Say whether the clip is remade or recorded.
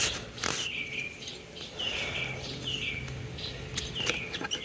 recorded